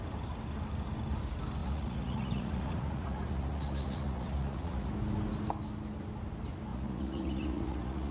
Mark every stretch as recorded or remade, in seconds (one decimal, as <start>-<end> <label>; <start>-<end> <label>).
0.0-1.6 recorded; 1.6-4.9 remade; 4.9-6.7 recorded; 6.7-8.1 remade